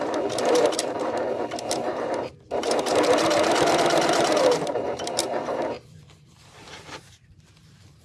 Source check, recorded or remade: remade